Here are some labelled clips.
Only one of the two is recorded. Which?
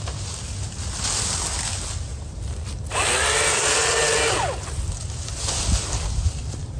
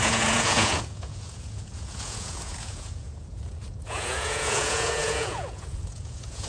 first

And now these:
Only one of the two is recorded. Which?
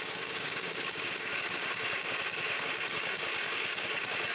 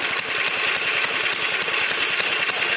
second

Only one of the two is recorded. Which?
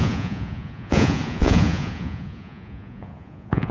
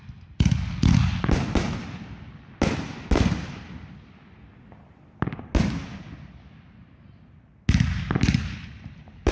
second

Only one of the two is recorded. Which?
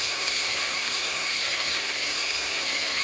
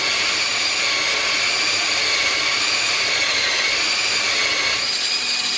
second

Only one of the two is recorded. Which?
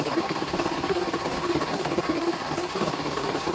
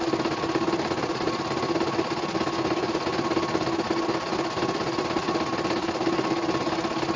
second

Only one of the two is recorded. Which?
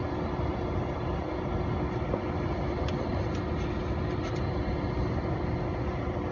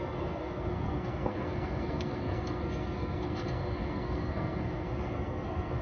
first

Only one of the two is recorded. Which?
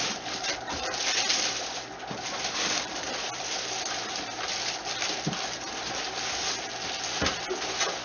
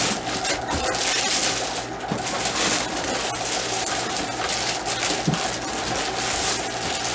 second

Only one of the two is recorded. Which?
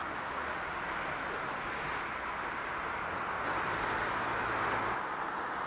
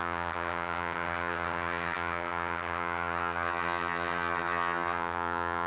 first